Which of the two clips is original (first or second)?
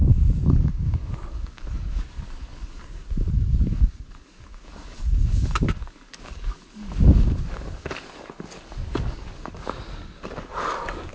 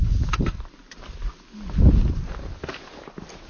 second